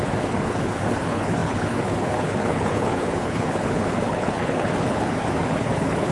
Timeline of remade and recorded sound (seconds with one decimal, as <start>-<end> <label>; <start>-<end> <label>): 0.0-6.1 remade